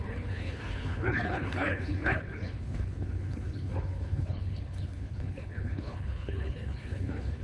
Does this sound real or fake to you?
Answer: fake